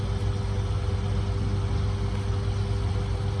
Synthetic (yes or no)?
no